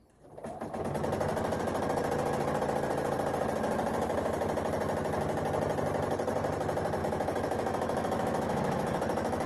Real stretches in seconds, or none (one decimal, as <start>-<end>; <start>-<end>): 0.0-7.0